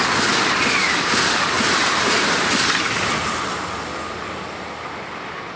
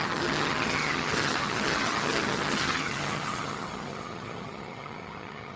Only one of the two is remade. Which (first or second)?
second